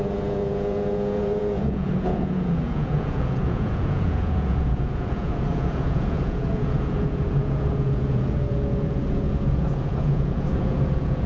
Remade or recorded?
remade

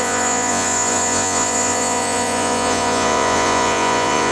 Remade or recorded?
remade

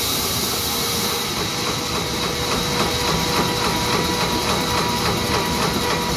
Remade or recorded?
recorded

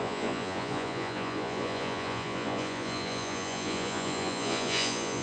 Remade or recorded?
remade